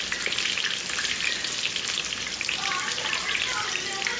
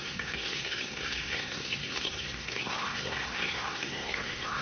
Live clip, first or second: first